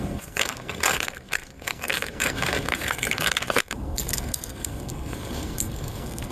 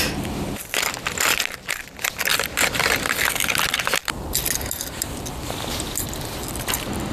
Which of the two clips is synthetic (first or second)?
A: first